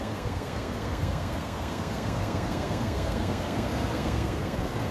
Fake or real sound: fake